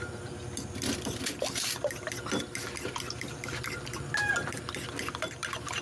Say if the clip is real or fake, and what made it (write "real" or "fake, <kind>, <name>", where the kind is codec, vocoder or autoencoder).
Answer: fake, vocoder, BigVGAN v2